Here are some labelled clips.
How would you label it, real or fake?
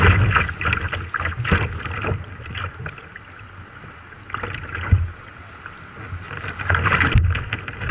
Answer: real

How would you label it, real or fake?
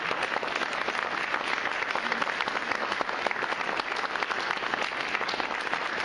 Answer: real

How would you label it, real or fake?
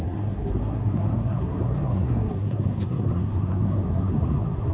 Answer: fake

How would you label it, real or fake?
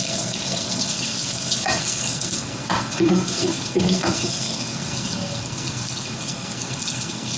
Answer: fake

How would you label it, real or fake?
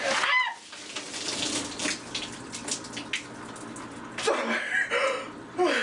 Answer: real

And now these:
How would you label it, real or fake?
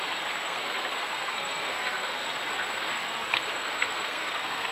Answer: fake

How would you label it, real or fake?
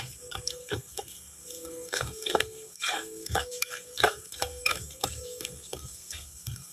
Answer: fake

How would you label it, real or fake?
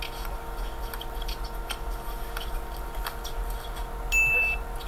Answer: real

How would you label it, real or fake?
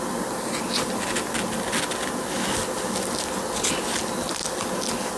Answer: real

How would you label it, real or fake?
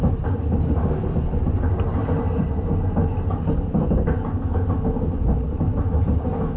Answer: real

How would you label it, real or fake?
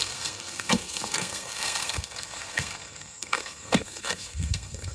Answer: fake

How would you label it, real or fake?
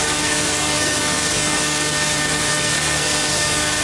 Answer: fake